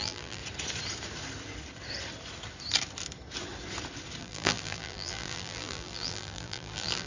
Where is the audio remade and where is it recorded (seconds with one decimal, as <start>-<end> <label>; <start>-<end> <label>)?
0.0-0.4 remade; 0.4-4.2 recorded; 4.2-7.1 remade